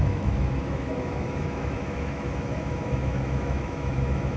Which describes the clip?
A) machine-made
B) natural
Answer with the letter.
A